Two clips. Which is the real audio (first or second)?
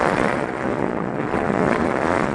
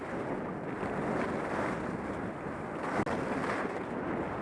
second